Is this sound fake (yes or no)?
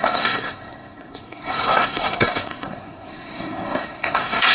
yes